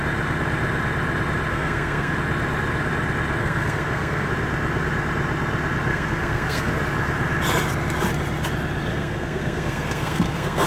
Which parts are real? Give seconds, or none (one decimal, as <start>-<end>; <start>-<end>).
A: 0.0-1.5; 2.1-3.4; 4.3-5.9; 6.7-8.9